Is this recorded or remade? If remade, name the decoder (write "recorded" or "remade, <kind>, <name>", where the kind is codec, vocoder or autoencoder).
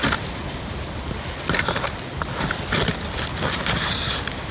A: recorded